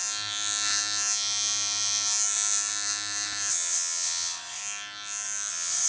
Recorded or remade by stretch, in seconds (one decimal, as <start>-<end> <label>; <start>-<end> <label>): 0.0-3.5 recorded; 3.5-4.6 remade; 4.6-5.5 recorded; 5.5-5.9 remade